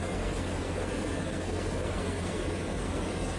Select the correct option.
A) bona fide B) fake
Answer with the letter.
B